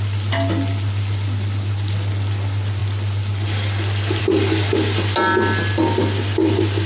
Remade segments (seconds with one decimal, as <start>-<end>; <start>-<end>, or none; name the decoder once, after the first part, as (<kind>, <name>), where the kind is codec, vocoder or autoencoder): none